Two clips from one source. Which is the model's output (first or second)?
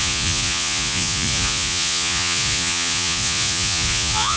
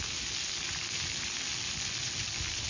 first